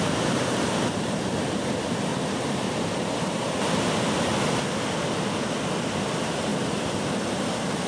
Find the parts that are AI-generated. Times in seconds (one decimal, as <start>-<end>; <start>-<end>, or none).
0.0-4.3; 5.9-7.9